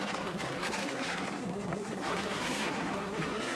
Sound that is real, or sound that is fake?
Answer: fake